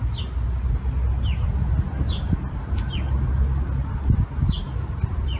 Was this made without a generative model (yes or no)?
yes